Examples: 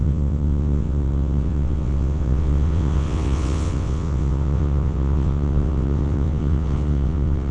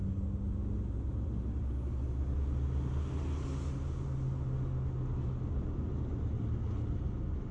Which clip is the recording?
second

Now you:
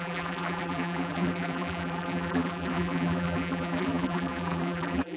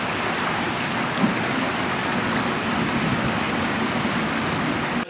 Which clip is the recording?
second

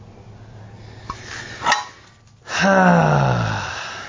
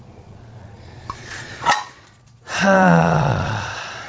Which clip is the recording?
first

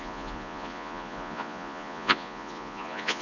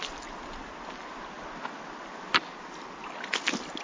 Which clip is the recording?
second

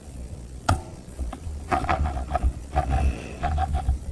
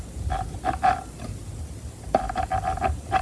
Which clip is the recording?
second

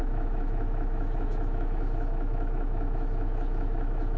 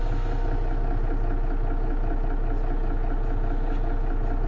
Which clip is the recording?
second